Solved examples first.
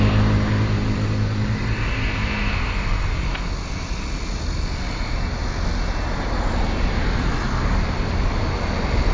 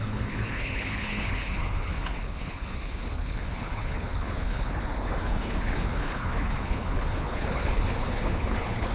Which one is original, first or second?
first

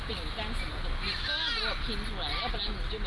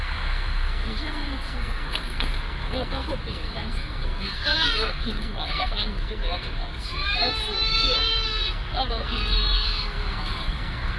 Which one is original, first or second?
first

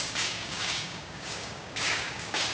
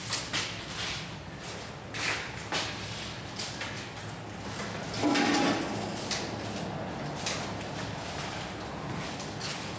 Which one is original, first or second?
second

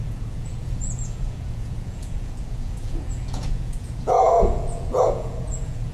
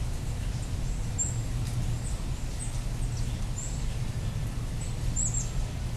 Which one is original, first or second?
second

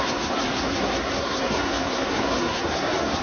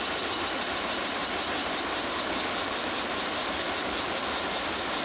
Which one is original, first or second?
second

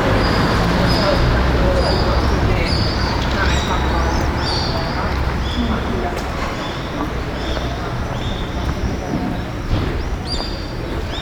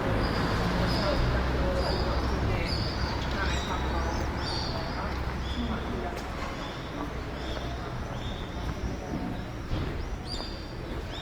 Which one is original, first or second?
second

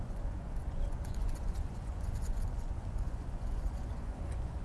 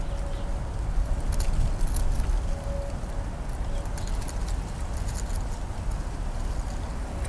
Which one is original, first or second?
second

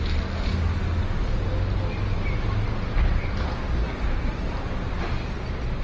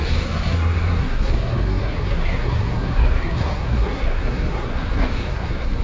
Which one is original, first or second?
first